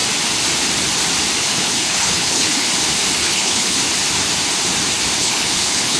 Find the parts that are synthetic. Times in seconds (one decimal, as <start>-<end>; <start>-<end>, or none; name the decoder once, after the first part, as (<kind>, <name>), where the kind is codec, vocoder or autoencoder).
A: 1.4-2.7 (codec, HILCodec); 3.2-3.8; 5.2-6.0